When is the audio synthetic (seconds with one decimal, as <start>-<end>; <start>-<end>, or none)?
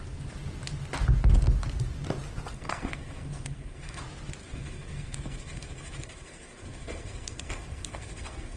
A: 2.5-4.0; 4.4-8.6